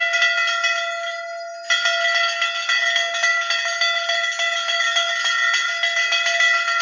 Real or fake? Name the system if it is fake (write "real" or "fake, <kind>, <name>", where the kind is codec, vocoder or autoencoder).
real